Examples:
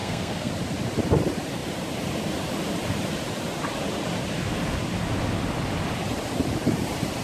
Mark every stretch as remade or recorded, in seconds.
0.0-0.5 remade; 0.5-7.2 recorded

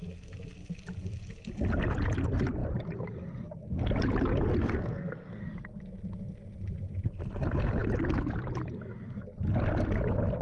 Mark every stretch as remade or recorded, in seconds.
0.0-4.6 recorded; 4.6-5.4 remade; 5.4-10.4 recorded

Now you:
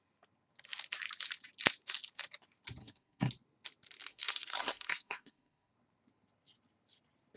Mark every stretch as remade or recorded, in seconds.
0.0-2.8 recorded; 2.8-3.3 remade; 3.3-4.1 recorded; 4.1-5.7 remade; 5.7-7.4 recorded

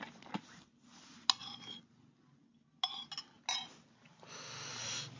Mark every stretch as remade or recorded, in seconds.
0.0-5.2 recorded

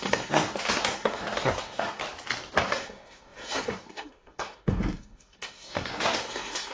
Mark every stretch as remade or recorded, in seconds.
0.0-2.0 remade; 2.0-2.6 recorded; 2.6-6.7 remade

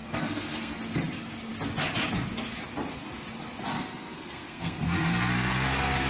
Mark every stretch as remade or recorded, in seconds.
0.0-0.8 remade; 0.8-3.7 recorded; 3.7-6.1 remade

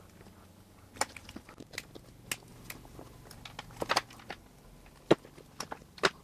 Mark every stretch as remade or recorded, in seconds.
0.0-6.2 recorded

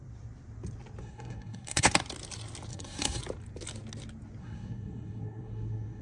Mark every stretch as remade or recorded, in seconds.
0.0-1.0 recorded; 1.0-1.9 remade; 1.9-2.7 recorded; 2.7-3.2 remade; 3.2-4.4 recorded; 4.4-6.0 remade